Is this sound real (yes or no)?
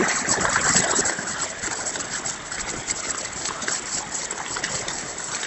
yes